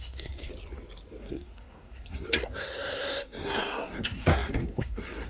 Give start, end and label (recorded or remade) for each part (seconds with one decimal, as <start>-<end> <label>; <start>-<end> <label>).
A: 0.0-0.5 remade; 0.5-1.2 recorded; 1.2-5.3 remade